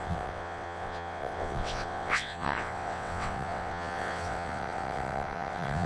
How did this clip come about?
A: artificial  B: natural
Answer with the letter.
A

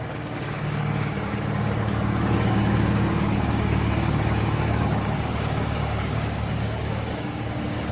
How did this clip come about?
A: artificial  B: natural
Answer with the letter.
A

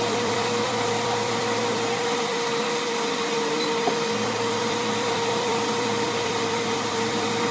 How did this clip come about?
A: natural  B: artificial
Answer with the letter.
B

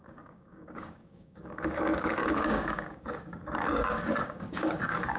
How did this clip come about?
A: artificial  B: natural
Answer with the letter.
A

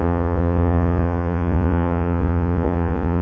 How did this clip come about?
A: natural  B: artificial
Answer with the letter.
B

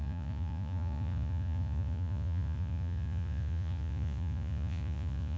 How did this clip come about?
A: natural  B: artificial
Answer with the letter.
B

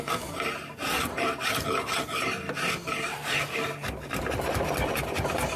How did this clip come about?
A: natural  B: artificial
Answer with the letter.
B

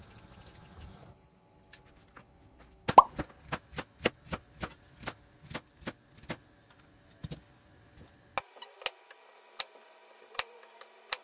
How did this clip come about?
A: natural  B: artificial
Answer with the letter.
A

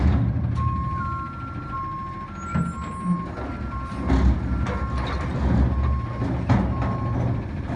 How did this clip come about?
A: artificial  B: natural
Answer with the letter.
B